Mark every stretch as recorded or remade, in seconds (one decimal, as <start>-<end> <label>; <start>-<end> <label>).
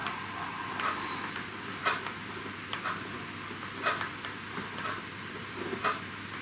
0.0-6.4 recorded